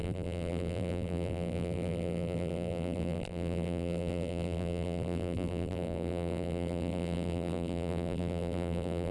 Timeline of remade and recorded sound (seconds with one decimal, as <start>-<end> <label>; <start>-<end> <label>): 0.0-9.1 remade